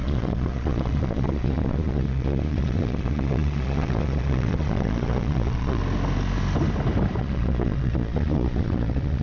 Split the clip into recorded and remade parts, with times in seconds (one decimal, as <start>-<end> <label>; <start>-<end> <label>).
0.0-5.8 remade; 5.8-7.2 recorded; 7.2-9.2 remade